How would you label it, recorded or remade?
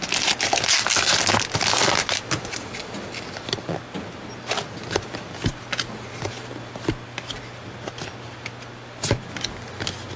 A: recorded